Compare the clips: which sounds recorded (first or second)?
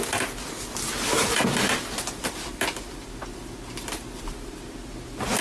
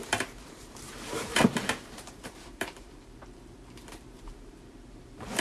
first